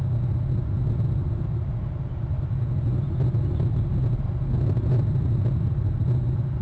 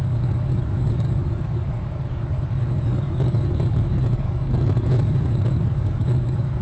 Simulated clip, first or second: second